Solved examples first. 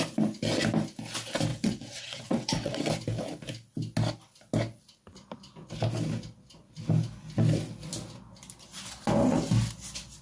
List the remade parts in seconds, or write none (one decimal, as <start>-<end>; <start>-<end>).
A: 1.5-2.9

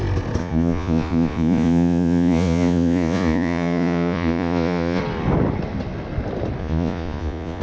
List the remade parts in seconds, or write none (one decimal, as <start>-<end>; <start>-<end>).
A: 0.4-5.0; 6.6-7.6

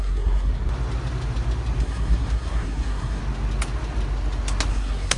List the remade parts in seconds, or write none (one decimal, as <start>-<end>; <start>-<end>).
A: 0.0-0.5; 1.8-3.2; 4.7-5.2

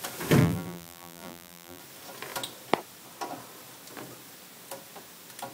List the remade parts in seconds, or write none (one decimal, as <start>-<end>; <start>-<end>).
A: 0.4-1.8

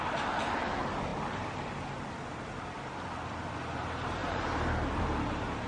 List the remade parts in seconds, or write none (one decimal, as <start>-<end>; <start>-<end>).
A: 4.2-5.0

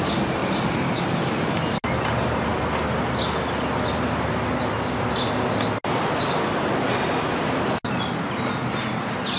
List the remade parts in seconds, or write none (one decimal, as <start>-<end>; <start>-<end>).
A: none